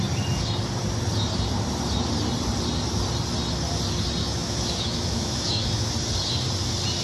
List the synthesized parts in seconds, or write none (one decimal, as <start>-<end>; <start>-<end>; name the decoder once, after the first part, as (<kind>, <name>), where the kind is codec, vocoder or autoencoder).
4.2-5.9 (autoencoder, DAC-VAE)